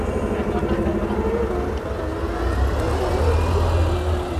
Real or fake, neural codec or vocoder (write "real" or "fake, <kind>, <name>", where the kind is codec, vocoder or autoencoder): real